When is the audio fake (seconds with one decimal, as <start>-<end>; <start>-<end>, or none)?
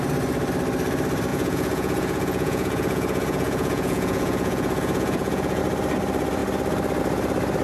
1.3-5.6